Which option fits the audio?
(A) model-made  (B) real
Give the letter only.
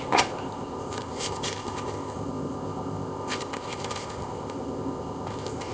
A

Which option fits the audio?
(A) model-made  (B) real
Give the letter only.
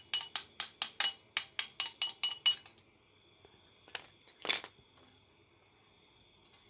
B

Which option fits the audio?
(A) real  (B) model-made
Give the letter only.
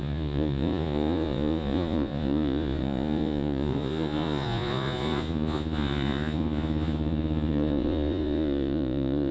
B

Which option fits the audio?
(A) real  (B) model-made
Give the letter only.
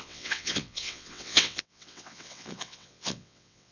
B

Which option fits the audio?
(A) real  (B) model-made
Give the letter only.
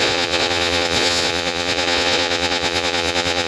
B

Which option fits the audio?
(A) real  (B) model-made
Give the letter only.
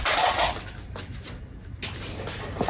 A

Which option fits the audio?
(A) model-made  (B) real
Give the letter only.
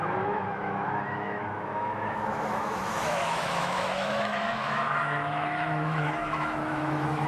A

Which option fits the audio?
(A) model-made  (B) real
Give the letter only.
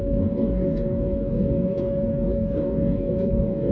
A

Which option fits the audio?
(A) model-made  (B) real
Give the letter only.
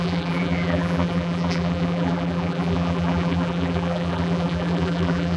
A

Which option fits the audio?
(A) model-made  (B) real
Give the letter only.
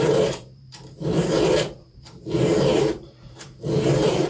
A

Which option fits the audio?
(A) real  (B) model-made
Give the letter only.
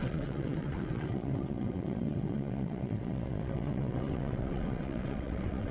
B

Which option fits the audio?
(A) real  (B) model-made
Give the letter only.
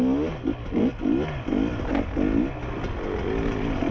A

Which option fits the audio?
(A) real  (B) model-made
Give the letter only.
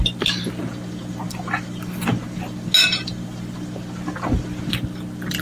A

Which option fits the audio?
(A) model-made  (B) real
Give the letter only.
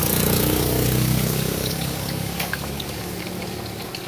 A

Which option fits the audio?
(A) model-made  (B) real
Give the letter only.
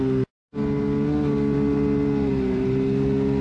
B